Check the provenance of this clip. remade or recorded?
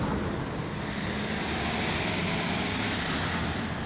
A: recorded